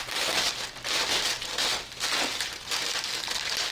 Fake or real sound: real